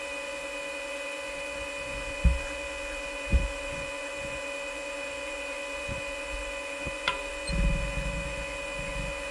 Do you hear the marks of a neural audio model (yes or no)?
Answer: yes